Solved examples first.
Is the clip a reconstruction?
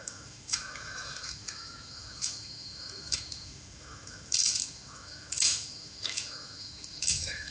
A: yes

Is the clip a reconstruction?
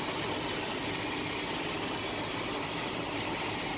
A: no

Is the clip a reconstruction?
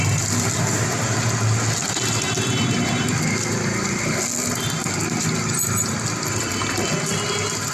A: no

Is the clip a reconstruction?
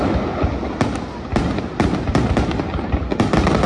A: no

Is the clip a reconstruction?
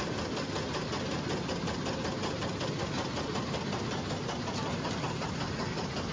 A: no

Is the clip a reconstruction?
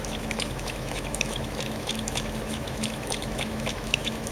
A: yes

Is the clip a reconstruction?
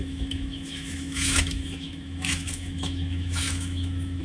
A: yes